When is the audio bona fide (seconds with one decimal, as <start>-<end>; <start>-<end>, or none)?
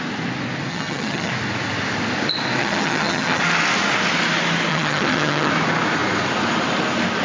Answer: 0.0-0.7; 1.3-2.6; 3.4-4.7; 5.5-7.2